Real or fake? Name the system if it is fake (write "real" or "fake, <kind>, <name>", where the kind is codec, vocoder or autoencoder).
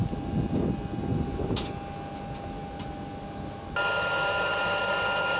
real